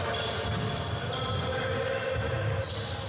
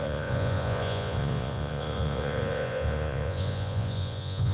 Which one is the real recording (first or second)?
first